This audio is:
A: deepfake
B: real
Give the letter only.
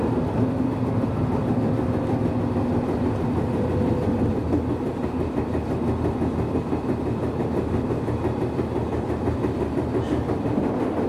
B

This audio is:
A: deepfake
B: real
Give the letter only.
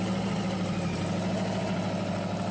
B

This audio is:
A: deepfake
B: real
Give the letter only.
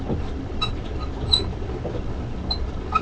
B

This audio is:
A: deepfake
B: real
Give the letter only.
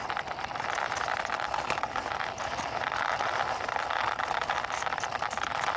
B